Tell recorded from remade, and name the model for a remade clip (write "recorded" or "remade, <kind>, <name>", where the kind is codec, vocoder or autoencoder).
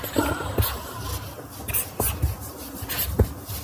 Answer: recorded